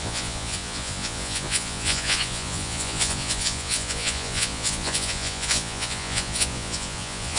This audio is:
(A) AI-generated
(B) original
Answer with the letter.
A